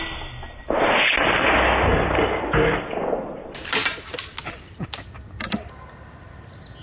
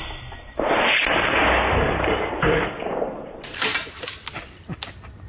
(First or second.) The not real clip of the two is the second